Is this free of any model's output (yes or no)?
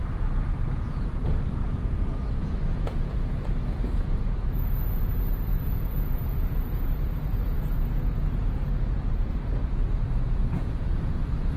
no